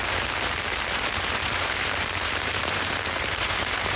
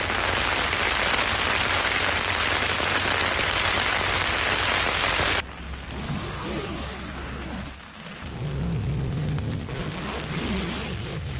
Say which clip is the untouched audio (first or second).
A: second